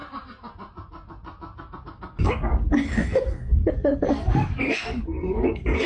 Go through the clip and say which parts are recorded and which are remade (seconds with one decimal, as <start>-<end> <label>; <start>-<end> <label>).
0.0-1.8 recorded; 1.8-5.9 remade